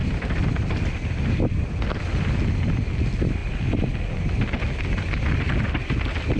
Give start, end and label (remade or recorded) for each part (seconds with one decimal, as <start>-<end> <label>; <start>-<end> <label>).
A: 0.0-6.4 recorded

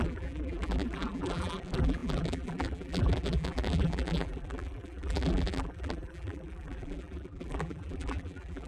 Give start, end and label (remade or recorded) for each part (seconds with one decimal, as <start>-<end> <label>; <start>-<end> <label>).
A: 0.0-8.7 remade

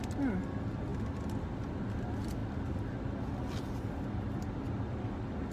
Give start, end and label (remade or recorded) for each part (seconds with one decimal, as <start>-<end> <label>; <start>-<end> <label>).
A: 0.0-0.9 recorded; 0.9-1.9 remade; 1.9-5.5 recorded

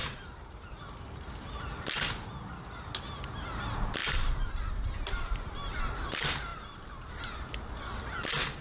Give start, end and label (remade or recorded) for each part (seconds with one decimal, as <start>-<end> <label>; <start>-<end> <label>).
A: 0.0-0.8 remade; 0.8-4.0 recorded; 4.0-5.8 remade; 5.8-6.5 recorded; 6.5-7.1 remade; 7.1-8.6 recorded

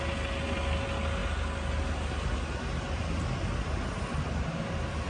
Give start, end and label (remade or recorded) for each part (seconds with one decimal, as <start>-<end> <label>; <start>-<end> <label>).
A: 0.0-5.1 recorded

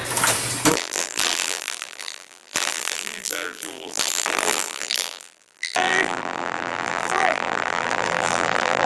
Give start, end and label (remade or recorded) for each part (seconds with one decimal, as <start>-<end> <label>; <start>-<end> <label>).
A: 0.0-0.7 recorded; 0.7-8.9 remade

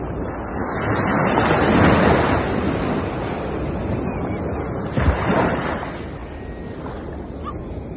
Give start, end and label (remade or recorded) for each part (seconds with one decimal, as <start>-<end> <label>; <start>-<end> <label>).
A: 0.0-8.0 recorded

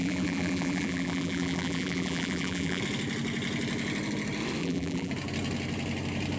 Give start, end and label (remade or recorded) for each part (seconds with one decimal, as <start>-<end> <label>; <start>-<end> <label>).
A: 0.0-2.8 remade; 2.8-4.6 recorded; 4.6-5.1 remade; 5.1-6.4 recorded